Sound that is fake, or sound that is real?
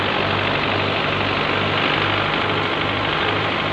real